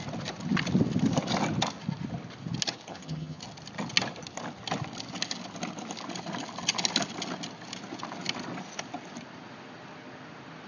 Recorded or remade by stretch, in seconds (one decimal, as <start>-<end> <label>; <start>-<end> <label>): 0.0-2.9 recorded; 2.9-3.4 remade; 3.4-10.7 recorded